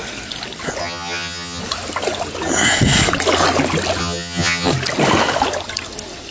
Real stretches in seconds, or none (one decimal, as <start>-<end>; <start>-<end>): 0.0-0.8; 1.6-4.0; 4.7-6.3